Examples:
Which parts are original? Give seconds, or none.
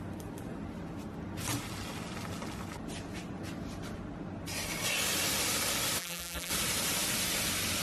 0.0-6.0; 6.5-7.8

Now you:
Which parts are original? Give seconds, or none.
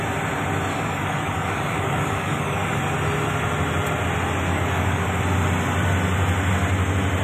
0.0-0.7; 2.8-4.5; 5.2-7.2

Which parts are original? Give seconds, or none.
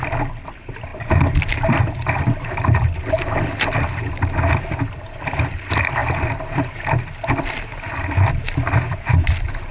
0.0-9.7